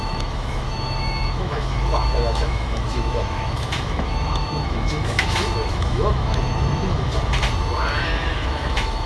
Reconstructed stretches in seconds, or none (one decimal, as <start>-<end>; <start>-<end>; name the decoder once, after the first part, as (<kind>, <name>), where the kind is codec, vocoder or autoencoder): 0.0-7.1 (autoencoder, DAC-VAE); 8.0-9.1

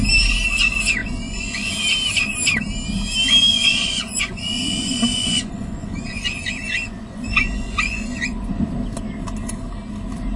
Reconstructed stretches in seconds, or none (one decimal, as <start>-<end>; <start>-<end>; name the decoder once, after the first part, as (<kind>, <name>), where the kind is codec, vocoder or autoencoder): 1.0-1.7 (vocoder, Vocos); 3.5-8.6

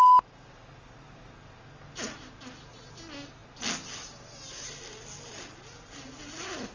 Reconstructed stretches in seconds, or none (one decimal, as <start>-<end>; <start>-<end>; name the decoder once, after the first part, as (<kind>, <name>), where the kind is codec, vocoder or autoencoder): 0.0-0.5 (codec, DAC)

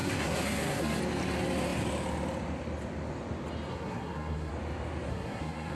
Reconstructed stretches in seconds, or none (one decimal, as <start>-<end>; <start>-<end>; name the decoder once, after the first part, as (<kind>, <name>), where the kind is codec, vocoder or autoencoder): 0.0-1.0 (codec, SNAC); 3.7-4.5; 5.1-5.8

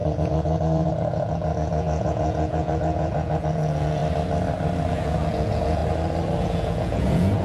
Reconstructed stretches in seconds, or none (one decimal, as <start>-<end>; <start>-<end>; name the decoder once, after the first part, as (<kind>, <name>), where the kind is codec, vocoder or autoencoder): 0.0-4.0 (vocoder, Vocos); 4.9-5.8; 6.4-7.4